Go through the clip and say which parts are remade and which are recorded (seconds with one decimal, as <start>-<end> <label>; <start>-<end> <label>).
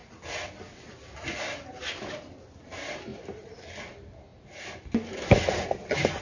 0.0-3.1 recorded; 3.1-3.9 remade; 3.9-4.3 recorded; 4.3-4.8 remade; 4.8-6.2 recorded